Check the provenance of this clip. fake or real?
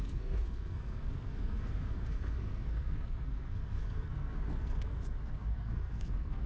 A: fake